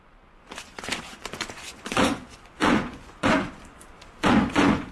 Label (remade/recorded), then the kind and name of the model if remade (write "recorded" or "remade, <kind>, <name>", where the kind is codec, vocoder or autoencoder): remade, vocoder, Vocos